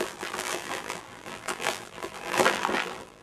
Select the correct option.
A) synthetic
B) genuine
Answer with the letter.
A